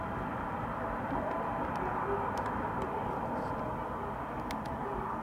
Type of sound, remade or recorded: recorded